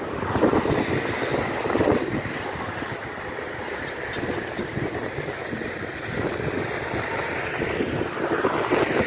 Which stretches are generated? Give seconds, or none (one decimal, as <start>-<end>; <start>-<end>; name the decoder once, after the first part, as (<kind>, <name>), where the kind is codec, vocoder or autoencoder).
none